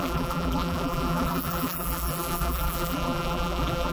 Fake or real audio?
fake